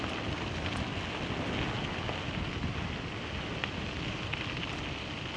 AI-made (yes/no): no